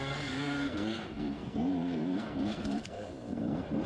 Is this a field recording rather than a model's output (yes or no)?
no